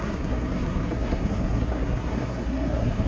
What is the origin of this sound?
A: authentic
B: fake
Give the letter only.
B